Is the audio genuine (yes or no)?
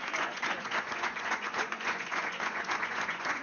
no